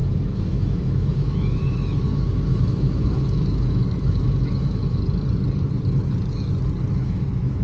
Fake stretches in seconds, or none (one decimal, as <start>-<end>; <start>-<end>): 0.0-5.0; 6.9-7.6